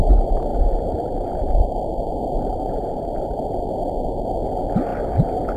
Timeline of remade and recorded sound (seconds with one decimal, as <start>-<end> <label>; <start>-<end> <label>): 0.0-0.5 recorded; 0.5-3.7 remade; 3.7-5.6 recorded